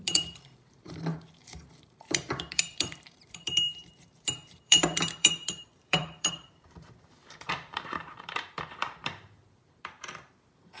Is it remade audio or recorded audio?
remade